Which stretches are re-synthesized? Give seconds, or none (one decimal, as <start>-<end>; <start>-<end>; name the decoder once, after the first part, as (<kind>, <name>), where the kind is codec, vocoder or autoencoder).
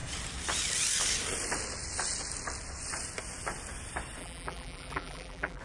4.2-5.6 (vocoder, BigVGAN v2)